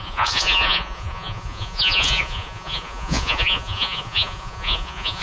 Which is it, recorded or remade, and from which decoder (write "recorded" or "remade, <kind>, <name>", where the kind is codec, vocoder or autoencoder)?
remade, vocoder, Vocos